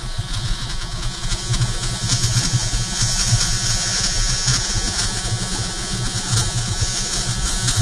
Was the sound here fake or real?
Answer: fake